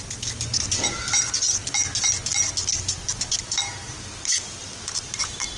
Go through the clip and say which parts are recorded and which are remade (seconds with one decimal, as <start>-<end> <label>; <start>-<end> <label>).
0.0-1.6 remade; 1.6-3.6 recorded; 3.6-5.6 remade